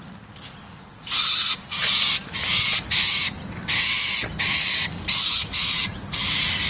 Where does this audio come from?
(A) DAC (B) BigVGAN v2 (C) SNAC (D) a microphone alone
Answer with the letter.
D